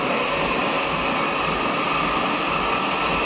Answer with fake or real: real